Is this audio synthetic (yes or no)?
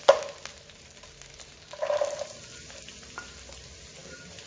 no